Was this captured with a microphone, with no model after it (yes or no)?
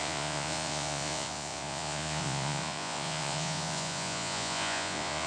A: no